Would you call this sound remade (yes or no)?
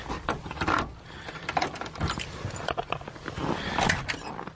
no